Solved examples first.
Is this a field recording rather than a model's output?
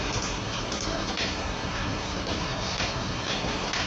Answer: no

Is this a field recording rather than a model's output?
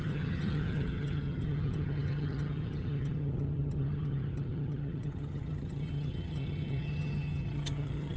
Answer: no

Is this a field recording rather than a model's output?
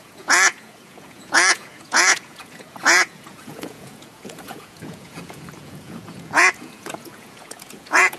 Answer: no